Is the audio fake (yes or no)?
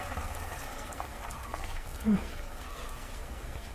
yes